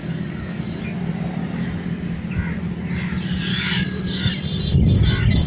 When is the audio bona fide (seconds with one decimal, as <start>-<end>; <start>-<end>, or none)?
0.8-3.5; 4.3-5.5